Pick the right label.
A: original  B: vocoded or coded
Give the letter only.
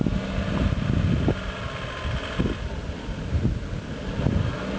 A